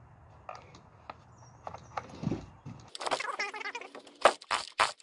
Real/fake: real